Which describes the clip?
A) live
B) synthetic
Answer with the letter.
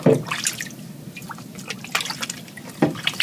A